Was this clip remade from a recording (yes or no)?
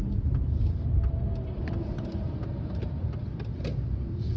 yes